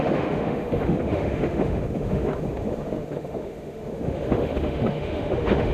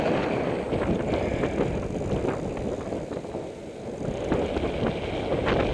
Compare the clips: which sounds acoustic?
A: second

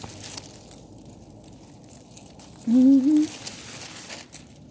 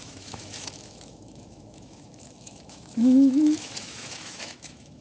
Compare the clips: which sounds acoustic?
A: first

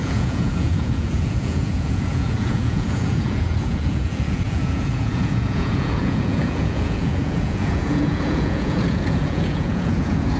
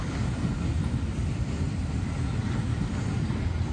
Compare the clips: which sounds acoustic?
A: second